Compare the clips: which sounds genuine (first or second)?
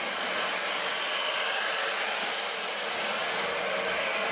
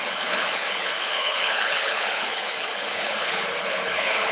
first